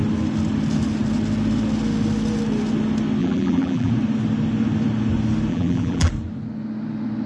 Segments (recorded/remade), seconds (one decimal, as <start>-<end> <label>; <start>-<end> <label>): 0.0-3.2 recorded; 3.2-3.9 remade; 3.9-5.5 recorded; 5.5-6.1 remade; 6.1-7.3 recorded